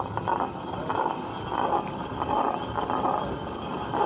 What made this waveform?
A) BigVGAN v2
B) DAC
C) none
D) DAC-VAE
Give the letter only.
A